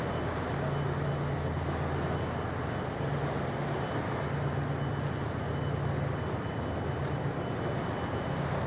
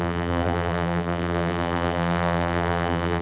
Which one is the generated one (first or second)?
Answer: second